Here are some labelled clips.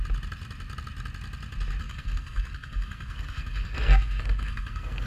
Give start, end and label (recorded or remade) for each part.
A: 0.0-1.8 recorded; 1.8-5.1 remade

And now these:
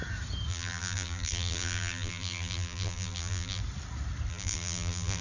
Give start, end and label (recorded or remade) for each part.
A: 0.0-0.5 recorded; 0.5-3.6 remade; 3.6-4.3 recorded; 4.3-5.2 remade